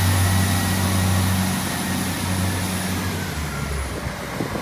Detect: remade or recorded recorded